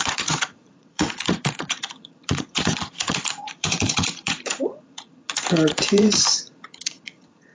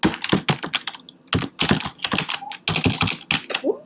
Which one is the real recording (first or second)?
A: second